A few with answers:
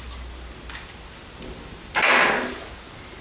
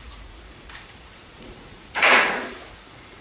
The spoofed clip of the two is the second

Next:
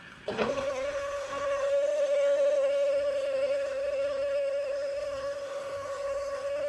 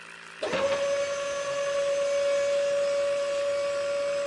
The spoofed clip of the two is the first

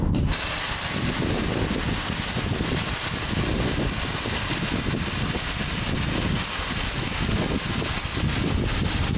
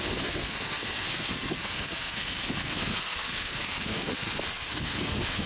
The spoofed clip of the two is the second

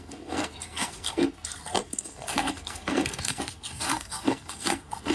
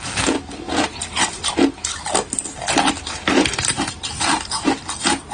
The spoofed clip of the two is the first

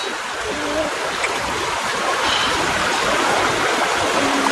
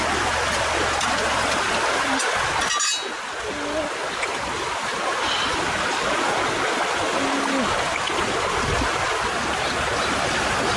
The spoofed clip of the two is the first